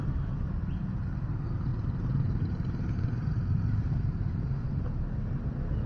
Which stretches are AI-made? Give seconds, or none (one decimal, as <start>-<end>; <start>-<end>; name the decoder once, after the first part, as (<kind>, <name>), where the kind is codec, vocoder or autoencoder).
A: 1.7-5.2 (vocoder, BigVGAN v2)